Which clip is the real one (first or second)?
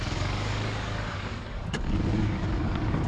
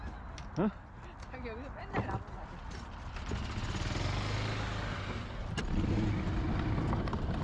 second